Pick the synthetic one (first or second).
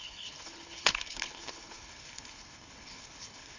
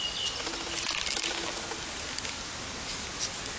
first